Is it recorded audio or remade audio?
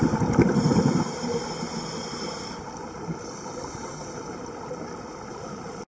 recorded